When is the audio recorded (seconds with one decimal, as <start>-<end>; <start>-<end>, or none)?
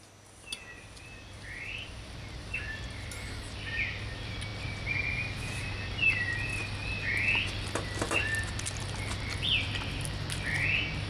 0.0-11.1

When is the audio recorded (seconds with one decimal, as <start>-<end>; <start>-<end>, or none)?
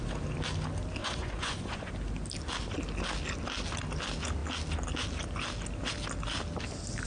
0.0-1.0; 1.9-7.1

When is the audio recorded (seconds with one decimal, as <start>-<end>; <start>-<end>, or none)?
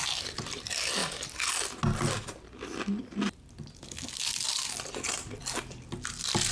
0.0-6.5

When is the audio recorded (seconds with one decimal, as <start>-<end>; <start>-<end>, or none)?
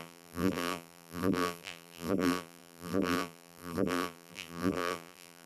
none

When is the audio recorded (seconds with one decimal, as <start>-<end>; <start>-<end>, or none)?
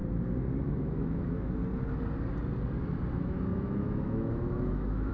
0.0-0.8; 1.6-3.1